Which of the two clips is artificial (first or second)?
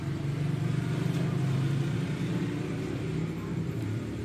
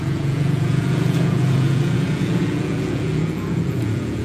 second